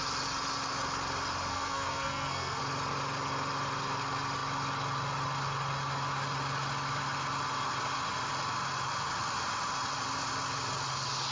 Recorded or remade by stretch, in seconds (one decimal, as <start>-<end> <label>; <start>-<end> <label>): 0.0-1.5 recorded; 1.5-2.6 remade; 2.6-11.3 recorded